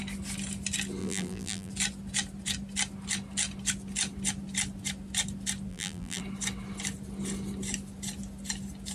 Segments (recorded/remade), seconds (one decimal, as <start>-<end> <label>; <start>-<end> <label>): 0.0-1.0 recorded; 1.0-1.7 remade; 1.7-5.7 recorded; 5.7-6.2 remade; 6.2-8.9 recorded